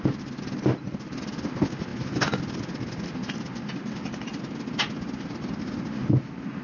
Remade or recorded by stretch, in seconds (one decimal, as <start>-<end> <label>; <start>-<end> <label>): 0.0-6.6 recorded